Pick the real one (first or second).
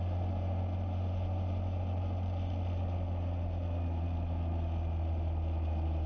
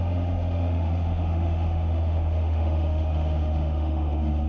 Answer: first